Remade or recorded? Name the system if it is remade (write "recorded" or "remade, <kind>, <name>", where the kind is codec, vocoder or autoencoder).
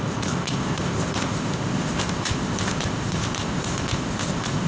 remade, codec, ZipCodec